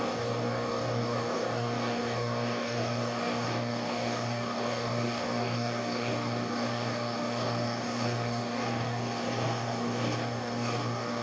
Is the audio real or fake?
fake